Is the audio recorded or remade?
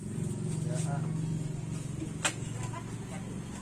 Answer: recorded